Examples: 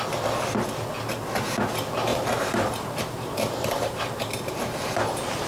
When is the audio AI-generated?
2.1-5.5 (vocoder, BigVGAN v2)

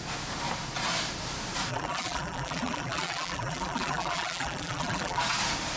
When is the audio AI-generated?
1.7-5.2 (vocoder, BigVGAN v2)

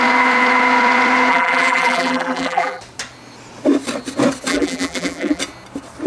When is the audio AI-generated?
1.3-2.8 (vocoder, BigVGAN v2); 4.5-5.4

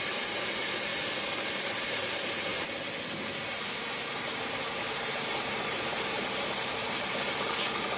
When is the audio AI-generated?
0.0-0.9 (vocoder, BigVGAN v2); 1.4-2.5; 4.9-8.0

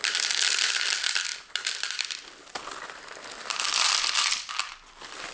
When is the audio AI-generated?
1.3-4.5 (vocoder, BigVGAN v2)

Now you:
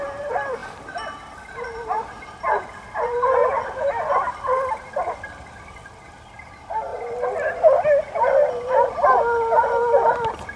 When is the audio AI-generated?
none

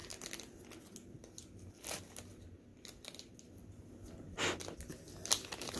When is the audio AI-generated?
none

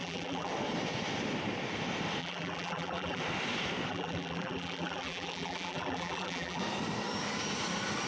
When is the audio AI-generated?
0.0-0.5 (vocoder, BigVGAN v2); 2.2-3.2; 3.9-6.6